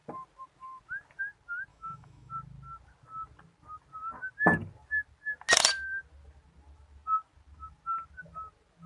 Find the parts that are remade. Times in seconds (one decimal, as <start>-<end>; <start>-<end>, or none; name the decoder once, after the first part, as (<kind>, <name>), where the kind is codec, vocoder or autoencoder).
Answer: 1.7-2.3 (autoencoder, DAC-VAE)